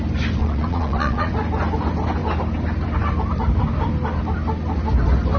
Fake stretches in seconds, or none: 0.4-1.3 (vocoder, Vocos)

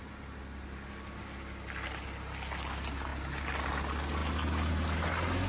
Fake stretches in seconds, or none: none

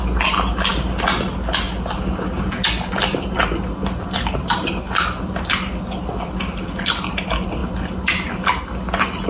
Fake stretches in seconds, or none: none

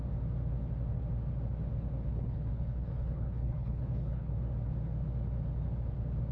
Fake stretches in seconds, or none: 2.0-4.4 (codec, HILCodec)

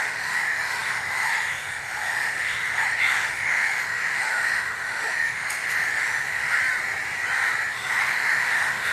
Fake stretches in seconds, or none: 0.0-6.6 (autoencoder, DAC-VAE); 7.7-8.9

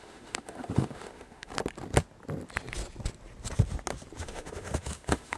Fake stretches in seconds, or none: 0.0-1.5 (autoencoder, DAC-VAE); 4.2-5.4